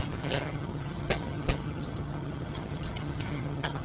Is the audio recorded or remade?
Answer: remade